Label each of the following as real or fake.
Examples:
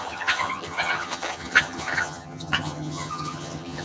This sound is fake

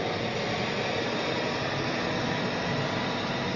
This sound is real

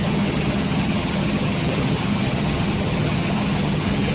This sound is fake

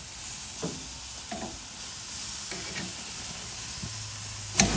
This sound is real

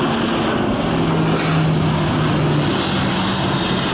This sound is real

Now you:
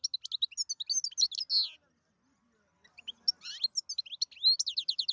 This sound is real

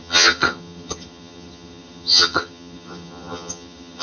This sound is fake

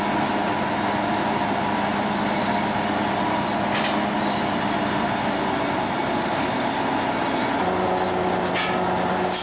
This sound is real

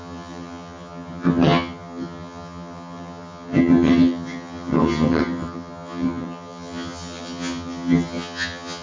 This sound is fake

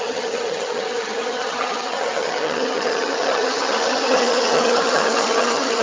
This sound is fake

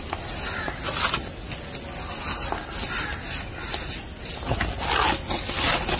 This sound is real